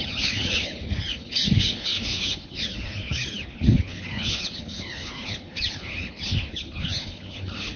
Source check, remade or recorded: remade